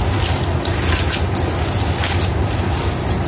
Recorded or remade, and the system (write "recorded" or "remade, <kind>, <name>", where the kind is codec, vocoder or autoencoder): recorded